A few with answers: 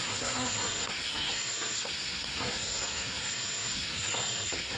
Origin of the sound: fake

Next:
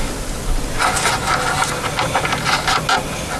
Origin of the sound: real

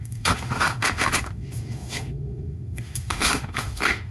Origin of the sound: fake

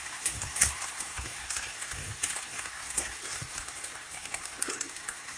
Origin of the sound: fake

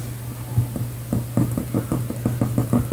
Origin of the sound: real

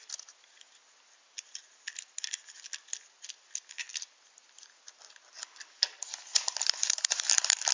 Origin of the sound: fake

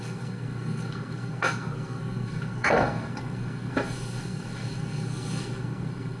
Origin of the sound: fake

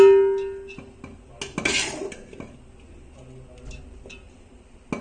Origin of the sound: real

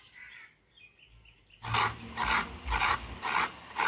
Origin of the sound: real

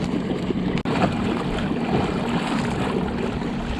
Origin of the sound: real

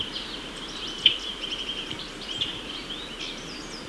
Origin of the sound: real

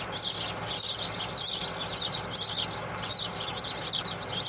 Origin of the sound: real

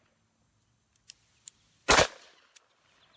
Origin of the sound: real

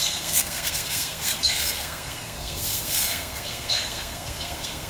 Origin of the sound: fake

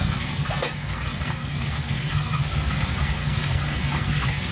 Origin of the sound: fake